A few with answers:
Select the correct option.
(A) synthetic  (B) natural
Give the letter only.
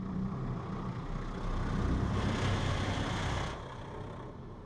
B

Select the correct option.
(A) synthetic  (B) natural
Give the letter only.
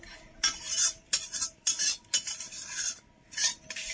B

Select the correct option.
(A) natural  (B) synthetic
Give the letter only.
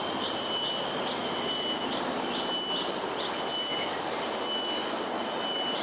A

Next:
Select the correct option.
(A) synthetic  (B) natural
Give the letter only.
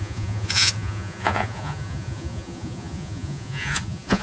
A